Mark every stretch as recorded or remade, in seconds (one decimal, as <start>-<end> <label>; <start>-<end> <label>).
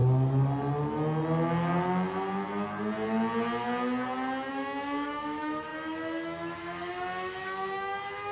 0.0-4.5 recorded; 4.5-8.3 remade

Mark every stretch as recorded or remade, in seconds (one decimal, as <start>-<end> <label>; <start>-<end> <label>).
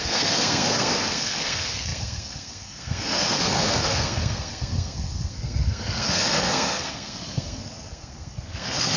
0.0-9.0 remade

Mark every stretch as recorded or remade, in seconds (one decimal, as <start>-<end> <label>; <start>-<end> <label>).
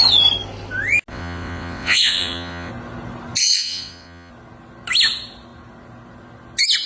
0.0-1.1 recorded; 1.1-2.7 remade; 2.7-3.4 recorded; 3.4-4.3 remade; 4.3-6.9 recorded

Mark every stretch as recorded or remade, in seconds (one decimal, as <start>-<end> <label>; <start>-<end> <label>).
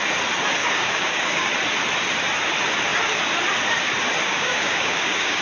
0.0-0.6 recorded; 0.6-1.5 remade; 1.5-4.2 recorded; 4.2-5.4 remade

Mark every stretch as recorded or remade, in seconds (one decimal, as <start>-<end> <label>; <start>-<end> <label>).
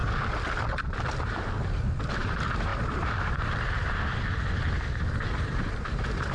0.0-2.1 recorded; 2.1-6.3 remade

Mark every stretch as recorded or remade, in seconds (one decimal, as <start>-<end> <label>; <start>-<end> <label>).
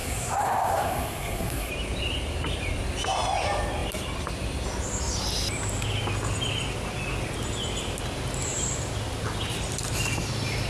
0.0-1.7 remade; 1.7-10.7 recorded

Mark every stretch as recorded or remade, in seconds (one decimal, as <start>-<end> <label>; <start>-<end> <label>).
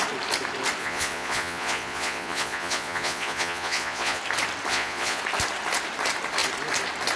0.0-0.8 recorded; 0.8-4.2 remade; 4.2-4.7 recorded; 4.7-5.2 remade; 5.2-7.2 recorded